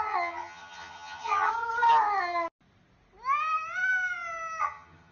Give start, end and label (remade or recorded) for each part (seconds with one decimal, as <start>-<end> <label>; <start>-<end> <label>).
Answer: 0.0-1.5 remade; 1.5-4.6 recorded; 4.6-5.1 remade